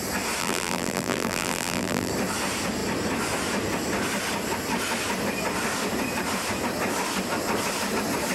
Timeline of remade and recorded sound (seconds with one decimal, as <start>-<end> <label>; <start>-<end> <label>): 0.0-0.4 recorded; 0.4-2.1 remade; 2.1-8.3 recorded